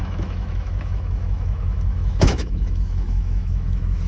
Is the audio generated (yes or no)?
yes